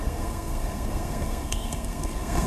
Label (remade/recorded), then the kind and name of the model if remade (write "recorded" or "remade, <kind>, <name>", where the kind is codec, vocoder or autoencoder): remade, codec, SNAC